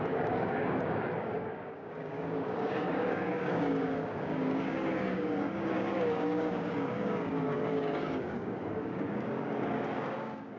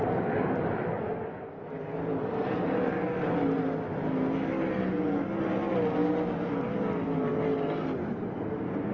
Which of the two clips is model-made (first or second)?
first